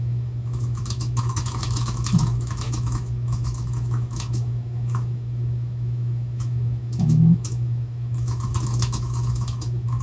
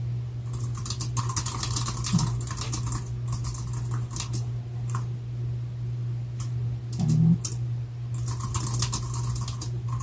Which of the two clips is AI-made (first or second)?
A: first